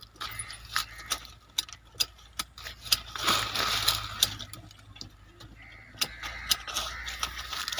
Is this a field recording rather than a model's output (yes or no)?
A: yes